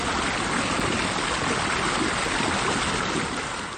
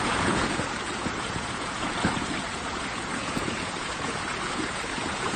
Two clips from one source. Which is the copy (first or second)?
second